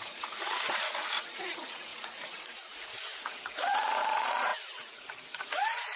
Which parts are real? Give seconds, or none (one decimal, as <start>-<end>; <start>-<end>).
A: none